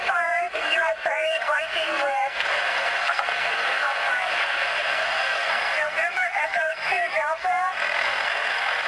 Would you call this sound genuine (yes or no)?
no